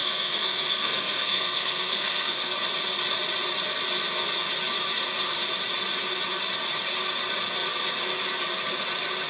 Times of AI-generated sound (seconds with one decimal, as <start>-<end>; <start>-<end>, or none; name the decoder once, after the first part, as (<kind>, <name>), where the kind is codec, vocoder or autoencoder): 0.0-2.5 (codec, SNAC)

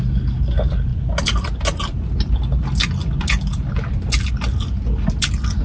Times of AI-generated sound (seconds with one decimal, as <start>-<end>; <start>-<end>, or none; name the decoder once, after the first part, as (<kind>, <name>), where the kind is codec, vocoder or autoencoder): none

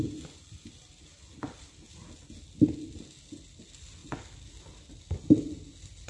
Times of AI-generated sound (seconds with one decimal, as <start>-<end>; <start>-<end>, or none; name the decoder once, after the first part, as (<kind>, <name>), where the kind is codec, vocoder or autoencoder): none

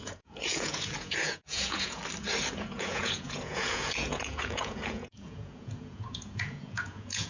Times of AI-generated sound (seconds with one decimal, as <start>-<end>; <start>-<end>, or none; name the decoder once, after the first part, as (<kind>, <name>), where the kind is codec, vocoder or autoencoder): 0.0-2.0 (vocoder, Vocos); 2.5-7.3

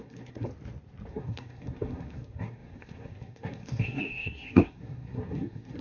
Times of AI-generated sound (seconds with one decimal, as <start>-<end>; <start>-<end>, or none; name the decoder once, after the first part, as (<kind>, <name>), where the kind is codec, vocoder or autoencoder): 0.0-0.5 (codec, SNAC); 1.1-5.8

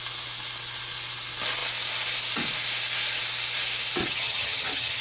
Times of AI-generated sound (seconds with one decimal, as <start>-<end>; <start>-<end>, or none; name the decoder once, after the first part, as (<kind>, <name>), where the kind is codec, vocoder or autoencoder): 4.0-5.0 (vocoder, HiFi-GAN)

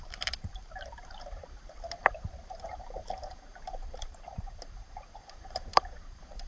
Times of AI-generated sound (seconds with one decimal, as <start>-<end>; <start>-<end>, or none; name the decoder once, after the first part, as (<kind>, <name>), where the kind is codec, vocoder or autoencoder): 0.0-6.5 (vocoder, BigVGAN v2)